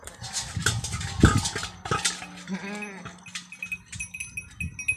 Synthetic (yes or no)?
no